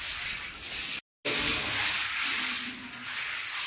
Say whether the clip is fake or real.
real